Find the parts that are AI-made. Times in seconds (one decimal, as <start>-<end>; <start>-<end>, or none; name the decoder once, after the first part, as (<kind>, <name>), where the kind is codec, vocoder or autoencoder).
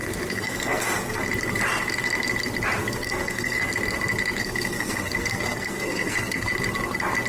0.0-1.2 (codec, SNAC); 2.8-3.7; 4.4-6.5